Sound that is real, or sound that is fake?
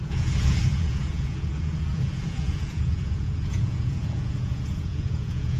fake